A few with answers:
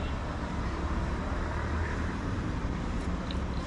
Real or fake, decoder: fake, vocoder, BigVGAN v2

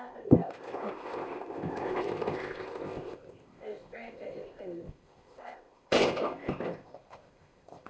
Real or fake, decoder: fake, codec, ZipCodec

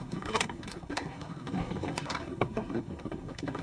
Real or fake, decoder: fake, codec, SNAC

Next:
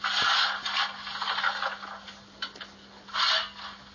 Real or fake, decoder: real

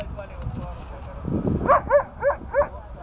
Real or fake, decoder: real